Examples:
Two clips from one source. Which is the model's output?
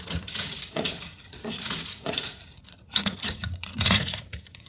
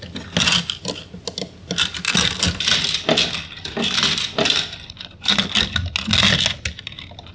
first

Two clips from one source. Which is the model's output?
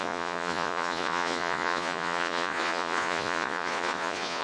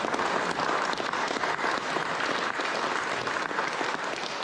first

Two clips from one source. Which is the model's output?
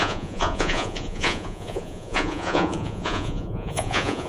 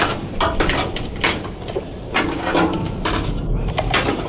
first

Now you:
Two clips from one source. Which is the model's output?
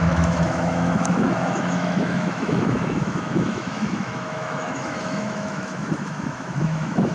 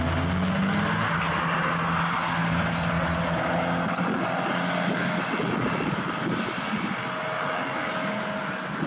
first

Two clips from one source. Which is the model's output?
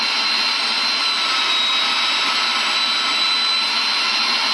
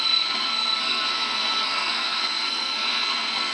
second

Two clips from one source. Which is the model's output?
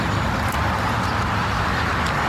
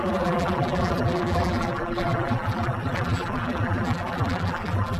second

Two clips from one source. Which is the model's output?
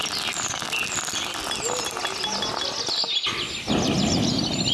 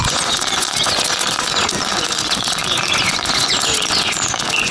second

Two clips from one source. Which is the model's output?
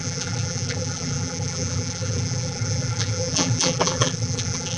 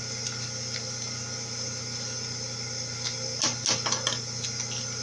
first